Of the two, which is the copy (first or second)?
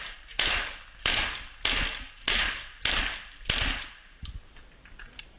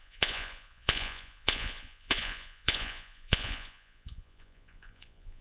second